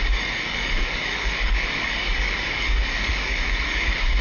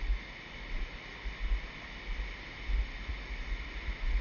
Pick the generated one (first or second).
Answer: first